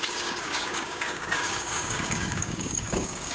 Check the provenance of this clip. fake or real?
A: fake